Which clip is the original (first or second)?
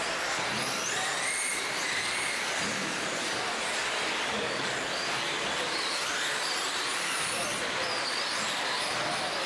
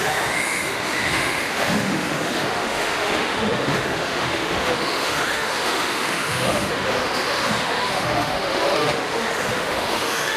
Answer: first